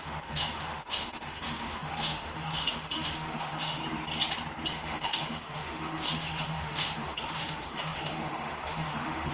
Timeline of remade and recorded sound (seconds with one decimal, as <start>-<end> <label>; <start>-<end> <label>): 0.0-3.8 remade; 3.8-4.7 recorded; 4.7-9.3 remade